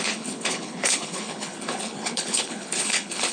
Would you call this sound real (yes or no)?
no